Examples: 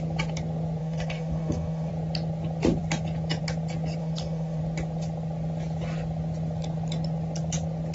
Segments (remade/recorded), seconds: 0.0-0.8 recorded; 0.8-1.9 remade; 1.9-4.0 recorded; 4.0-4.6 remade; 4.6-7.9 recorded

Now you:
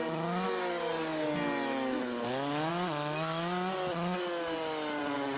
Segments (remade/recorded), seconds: 0.0-5.4 recorded

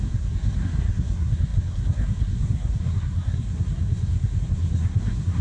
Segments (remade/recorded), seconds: 0.0-5.4 remade

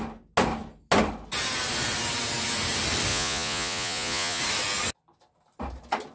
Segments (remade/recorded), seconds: 0.0-3.1 recorded; 3.1-4.4 remade; 4.4-6.1 recorded

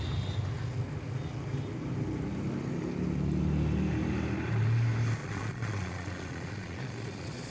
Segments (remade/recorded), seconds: 0.0-5.2 recorded; 5.2-7.5 remade

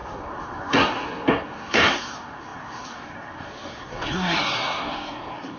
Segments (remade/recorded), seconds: 0.0-5.6 remade

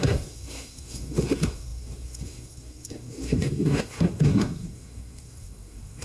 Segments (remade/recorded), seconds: 0.0-6.0 remade